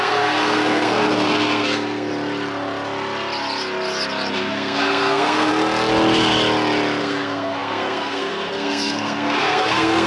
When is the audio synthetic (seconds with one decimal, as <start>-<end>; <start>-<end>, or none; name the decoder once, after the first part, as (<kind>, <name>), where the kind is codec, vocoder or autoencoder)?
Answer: 0.0-2.1 (codec, SNAC); 4.3-5.5; 7.0-10.1